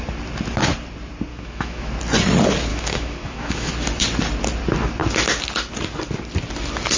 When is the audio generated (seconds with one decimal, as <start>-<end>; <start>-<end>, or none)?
1.3-1.9; 2.7-3.7